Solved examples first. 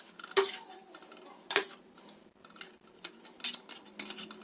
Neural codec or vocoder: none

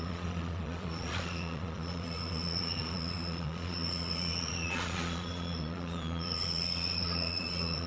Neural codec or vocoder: vocoder, Vocos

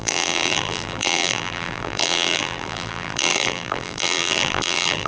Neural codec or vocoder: vocoder, BigVGAN v2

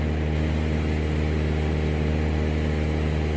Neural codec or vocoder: none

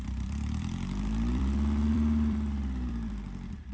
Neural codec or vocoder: vocoder, BigVGAN v2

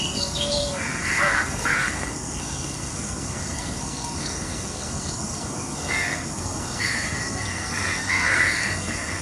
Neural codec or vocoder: codec, SNAC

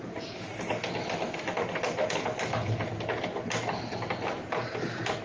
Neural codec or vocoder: none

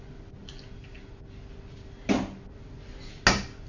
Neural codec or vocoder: none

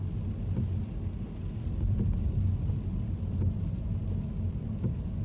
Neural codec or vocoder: none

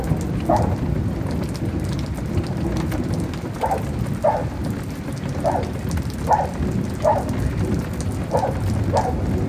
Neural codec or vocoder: none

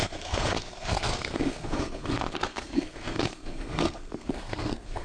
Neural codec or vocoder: codec, SNAC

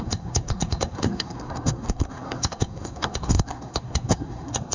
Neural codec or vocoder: codec, SNAC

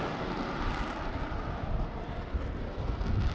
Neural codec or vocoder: none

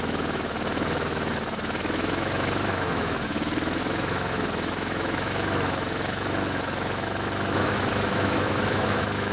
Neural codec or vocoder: autoencoder, DAC-VAE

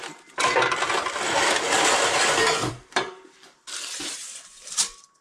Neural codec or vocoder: vocoder, BigVGAN v2